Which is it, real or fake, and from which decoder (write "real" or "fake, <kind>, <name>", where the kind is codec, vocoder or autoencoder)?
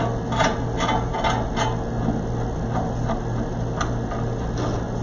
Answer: real